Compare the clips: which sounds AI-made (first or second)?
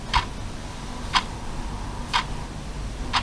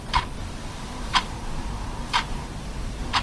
second